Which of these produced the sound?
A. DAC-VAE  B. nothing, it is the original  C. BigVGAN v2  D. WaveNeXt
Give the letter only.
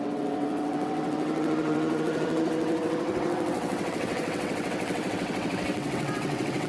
D